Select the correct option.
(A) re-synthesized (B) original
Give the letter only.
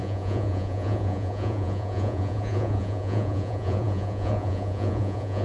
A